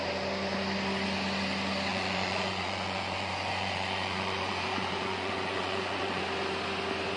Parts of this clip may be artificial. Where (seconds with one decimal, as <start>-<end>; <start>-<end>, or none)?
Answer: 1.9-6.2